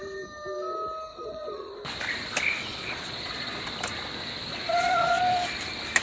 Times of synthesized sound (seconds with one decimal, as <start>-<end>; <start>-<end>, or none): 1.1-1.7; 2.7-3.6; 4.5-5.2